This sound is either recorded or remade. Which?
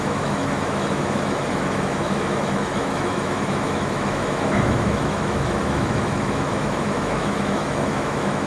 remade